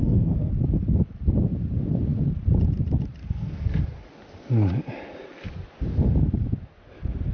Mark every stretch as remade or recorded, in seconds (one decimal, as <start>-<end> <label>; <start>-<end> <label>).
0.0-0.5 remade; 0.5-3.2 recorded; 3.2-3.8 remade; 3.8-7.3 recorded